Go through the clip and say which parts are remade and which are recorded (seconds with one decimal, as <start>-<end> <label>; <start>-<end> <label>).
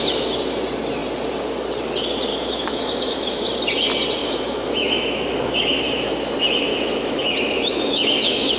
0.0-2.3 recorded; 2.3-3.4 remade; 3.4-4.2 recorded; 4.2-8.6 remade